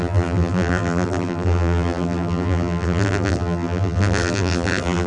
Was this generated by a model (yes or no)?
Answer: yes